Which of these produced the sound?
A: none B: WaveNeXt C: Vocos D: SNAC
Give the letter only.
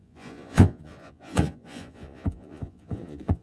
C